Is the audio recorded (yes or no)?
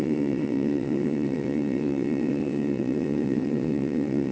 no